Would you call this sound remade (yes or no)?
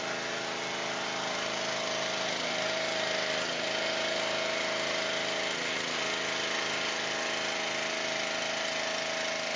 no